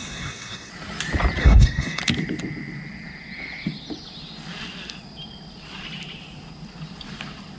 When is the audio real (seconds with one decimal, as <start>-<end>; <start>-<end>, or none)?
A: 0.7-1.4; 2.0-7.6